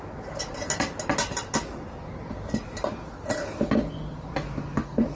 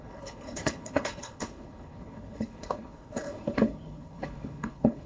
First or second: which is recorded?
first